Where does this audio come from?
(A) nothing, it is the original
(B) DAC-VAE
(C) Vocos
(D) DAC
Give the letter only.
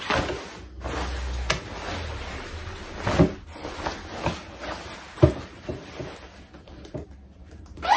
A